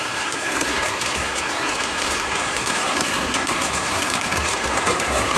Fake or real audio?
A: fake